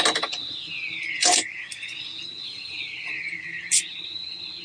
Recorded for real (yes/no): yes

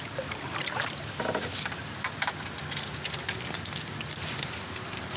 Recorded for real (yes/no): yes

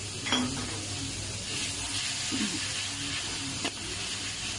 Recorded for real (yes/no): yes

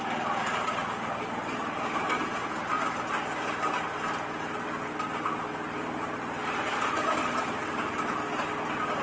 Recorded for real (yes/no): yes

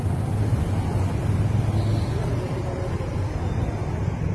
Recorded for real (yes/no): yes